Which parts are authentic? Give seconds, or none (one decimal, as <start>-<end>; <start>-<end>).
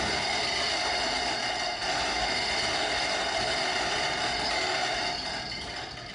0.0-6.1